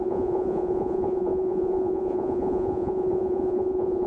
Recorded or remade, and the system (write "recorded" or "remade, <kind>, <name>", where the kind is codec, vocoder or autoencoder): remade, vocoder, Vocos